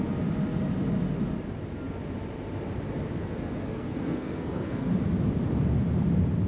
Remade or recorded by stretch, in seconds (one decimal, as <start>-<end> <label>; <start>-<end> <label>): 0.0-3.2 recorded; 3.2-4.9 remade; 4.9-6.5 recorded